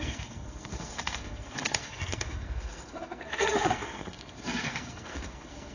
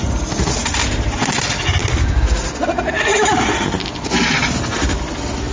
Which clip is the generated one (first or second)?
first